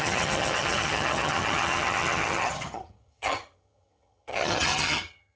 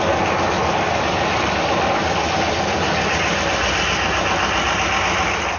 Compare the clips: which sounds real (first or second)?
second